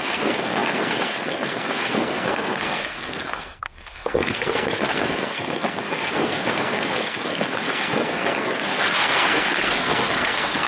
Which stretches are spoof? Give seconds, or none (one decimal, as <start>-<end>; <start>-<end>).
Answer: 0.0-10.7